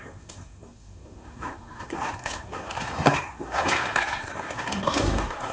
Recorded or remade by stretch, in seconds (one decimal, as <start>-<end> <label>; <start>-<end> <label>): 0.0-5.5 remade